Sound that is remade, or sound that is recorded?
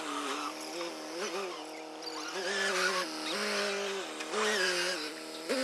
recorded